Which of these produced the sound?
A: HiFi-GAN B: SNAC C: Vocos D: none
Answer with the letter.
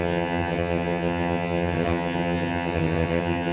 A